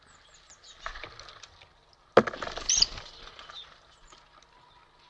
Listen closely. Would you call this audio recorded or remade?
recorded